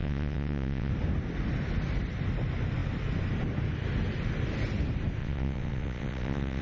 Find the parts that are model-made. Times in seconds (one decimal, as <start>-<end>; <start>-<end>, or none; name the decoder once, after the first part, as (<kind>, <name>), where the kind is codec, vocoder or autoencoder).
0.0-0.9 (vocoder, WaveNeXt); 5.2-6.6